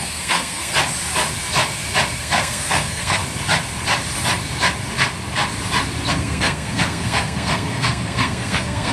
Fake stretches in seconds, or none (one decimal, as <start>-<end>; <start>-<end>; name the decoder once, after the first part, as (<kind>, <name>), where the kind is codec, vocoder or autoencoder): 0.0-0.7 (codec, SNAC); 2.2-3.2; 6.1-8.9